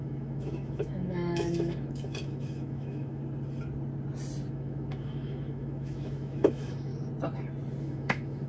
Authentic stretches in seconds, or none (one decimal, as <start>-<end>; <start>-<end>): 3.2-4.5; 6.9-7.8